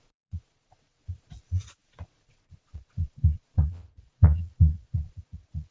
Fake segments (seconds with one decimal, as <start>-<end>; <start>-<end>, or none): 0.0-5.7